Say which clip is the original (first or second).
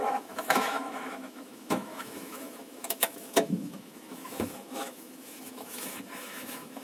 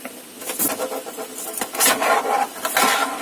second